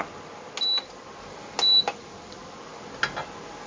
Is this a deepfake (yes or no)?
no